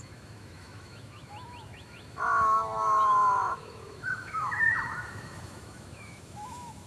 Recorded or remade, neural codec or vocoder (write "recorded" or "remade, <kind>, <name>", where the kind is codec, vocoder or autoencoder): remade, autoencoder, DAC-VAE